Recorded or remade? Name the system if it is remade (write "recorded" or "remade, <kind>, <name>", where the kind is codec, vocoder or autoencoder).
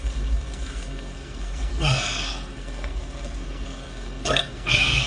remade, codec, SNAC